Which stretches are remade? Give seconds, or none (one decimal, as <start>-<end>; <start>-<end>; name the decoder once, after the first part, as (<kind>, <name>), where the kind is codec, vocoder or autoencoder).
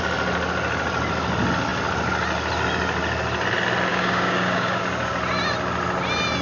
3.9-4.8 (codec, DAC)